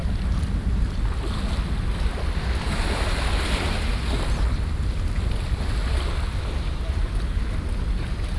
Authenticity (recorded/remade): recorded